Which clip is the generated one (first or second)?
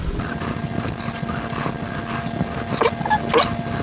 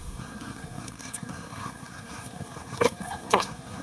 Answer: second